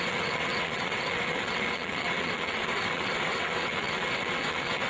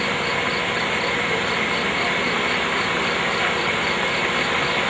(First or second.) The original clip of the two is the second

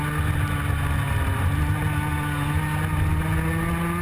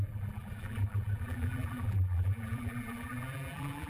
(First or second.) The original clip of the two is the first